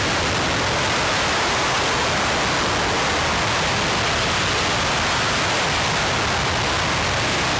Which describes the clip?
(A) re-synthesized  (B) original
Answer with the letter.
B